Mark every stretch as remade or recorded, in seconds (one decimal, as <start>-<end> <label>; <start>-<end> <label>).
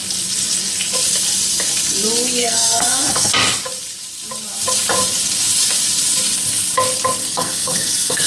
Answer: 0.0-2.4 recorded; 2.4-3.3 remade; 3.3-7.2 recorded; 7.2-8.3 remade